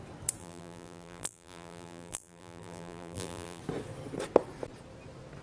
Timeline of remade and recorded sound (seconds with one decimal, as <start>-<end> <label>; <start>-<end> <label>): 0.0-0.4 recorded; 0.4-3.6 remade; 3.6-5.4 recorded